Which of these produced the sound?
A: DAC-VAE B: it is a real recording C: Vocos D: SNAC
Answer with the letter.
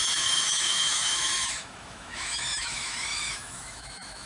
A